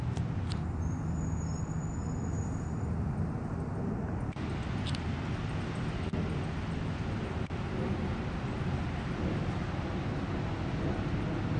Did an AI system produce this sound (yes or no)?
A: no